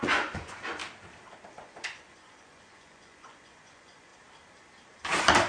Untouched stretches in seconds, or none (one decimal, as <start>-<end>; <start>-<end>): 0.8-1.5; 4.1-5.5